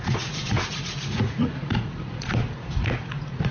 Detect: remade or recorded remade